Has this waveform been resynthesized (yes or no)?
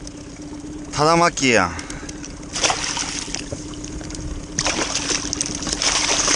no